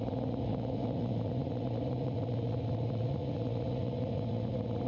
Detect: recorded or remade remade